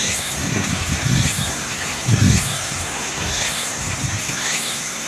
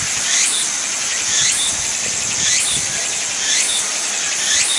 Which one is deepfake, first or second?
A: first